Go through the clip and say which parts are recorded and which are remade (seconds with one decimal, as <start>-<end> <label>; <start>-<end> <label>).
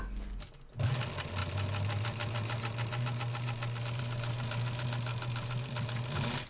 0.0-6.5 recorded